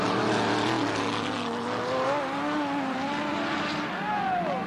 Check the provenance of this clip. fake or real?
real